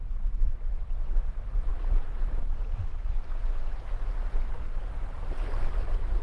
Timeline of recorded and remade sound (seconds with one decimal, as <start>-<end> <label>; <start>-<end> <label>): 0.0-1.7 recorded; 1.7-4.6 remade; 4.6-6.2 recorded

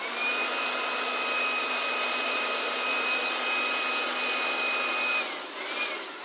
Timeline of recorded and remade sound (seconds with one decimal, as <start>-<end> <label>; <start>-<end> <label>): 0.0-1.6 recorded; 1.6-2.7 remade; 2.7-6.2 recorded